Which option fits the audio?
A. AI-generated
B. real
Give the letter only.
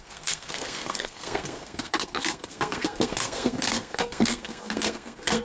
A